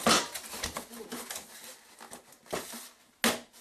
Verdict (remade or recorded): recorded